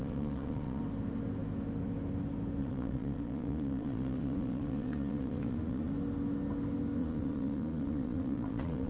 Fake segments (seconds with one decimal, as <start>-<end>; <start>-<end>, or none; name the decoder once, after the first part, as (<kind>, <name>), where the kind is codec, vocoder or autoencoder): 0.0-0.8 (vocoder, Vocos); 2.6-5.9; 7.0-8.9